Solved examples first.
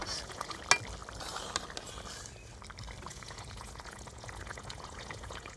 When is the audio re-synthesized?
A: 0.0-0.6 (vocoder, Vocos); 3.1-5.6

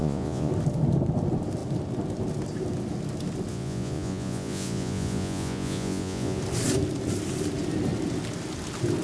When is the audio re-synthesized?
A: 0.0-0.5 (vocoder, Vocos); 3.5-6.4